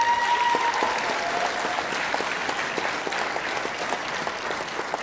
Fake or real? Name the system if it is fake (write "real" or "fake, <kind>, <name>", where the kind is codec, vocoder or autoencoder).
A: real